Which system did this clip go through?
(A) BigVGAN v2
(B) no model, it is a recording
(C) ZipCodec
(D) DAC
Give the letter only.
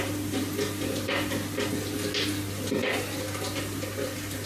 B